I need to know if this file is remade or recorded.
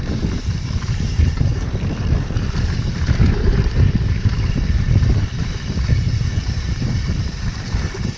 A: remade